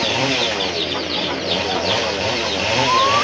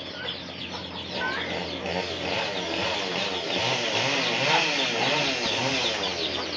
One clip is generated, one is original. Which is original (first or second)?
second